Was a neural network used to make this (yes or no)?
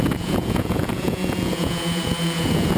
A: yes